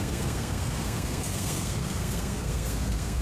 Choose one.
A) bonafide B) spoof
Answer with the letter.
B